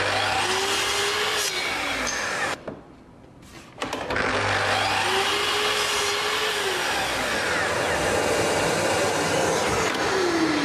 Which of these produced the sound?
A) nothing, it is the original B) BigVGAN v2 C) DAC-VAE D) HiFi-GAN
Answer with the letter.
A